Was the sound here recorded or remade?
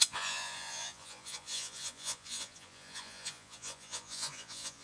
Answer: remade